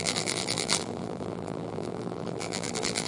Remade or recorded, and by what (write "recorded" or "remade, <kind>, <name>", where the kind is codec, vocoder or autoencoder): remade, vocoder, BigVGAN v2